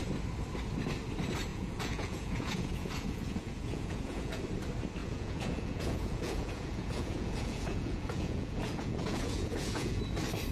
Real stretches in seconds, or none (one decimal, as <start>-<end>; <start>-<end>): 0.0-1.5; 4.4-5.0; 10.0-10.5